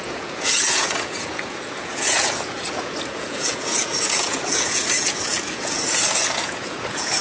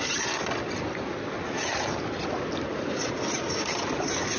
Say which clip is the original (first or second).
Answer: second